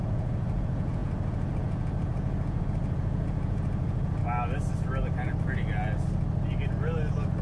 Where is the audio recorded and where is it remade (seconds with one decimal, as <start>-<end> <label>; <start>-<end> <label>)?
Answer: 0.0-4.2 remade; 4.2-7.4 recorded